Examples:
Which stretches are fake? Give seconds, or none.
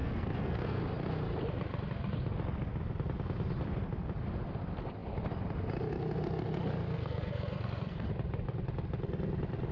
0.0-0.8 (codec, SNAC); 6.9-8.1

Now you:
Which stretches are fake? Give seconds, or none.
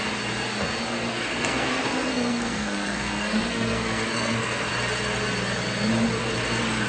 1.1-4.7 (codec, SNAC)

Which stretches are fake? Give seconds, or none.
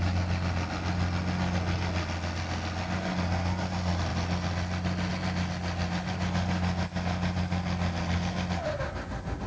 none